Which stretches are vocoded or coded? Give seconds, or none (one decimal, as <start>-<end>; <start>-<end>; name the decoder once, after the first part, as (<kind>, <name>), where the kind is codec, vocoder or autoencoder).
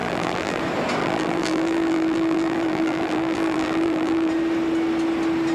0.0-0.6 (vocoder, BigVGAN v2); 1.0-4.3